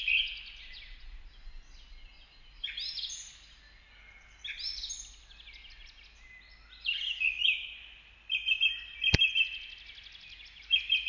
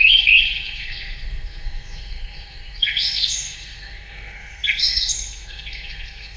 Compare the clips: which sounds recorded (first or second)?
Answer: first